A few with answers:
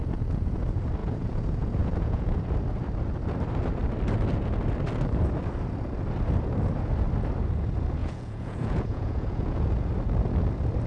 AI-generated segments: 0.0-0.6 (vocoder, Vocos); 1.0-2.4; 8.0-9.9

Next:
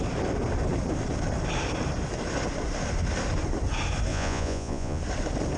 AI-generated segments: 4.1-5.0 (vocoder, Vocos)